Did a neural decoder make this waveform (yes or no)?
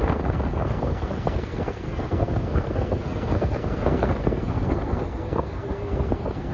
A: yes